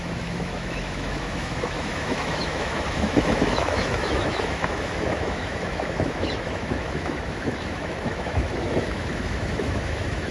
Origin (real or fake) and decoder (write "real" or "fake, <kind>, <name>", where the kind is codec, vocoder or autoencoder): fake, autoencoder, DAC-VAE